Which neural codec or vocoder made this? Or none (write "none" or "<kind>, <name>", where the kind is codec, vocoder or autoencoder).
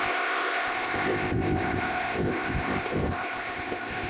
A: codec, ZipCodec